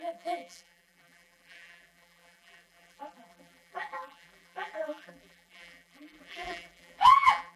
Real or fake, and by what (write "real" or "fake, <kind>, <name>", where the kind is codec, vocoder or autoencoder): fake, vocoder, BigVGAN v2